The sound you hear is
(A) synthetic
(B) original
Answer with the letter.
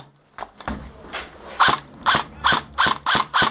A